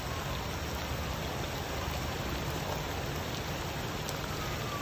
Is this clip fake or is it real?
real